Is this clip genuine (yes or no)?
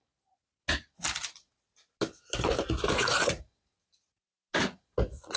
yes